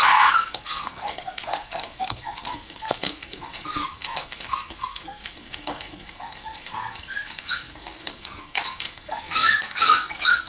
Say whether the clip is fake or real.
fake